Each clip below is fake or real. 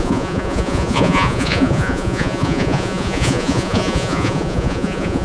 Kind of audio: fake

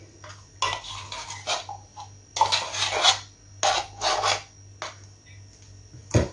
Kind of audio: real